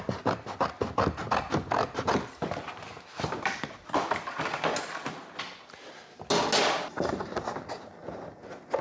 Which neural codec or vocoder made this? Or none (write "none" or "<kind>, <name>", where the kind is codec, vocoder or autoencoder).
none